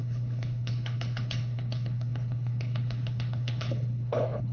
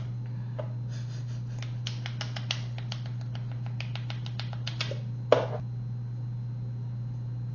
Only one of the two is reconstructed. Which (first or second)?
first